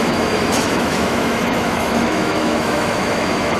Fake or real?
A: fake